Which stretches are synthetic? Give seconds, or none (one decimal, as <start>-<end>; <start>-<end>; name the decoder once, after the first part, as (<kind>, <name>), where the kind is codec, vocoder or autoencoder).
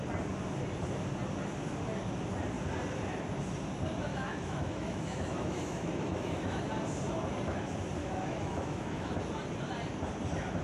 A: 4.1-6.6 (autoencoder, DAC-VAE); 8.0-9.2